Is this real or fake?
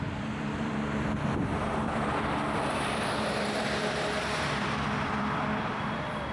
fake